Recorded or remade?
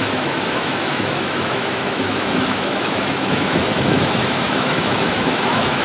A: remade